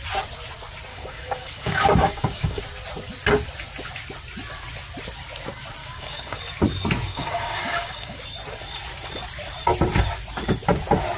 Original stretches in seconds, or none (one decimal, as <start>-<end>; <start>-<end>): 0.0-0.9; 2.6-5.8; 6.4-7.1; 8.2-11.2